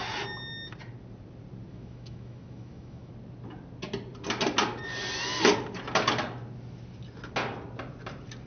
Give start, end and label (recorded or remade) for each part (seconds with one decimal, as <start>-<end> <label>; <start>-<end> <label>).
0.0-1.7 recorded; 1.7-3.1 remade; 3.1-8.5 recorded